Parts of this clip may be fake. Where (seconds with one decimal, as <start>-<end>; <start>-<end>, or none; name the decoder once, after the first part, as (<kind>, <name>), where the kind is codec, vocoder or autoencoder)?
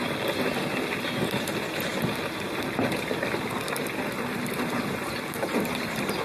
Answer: none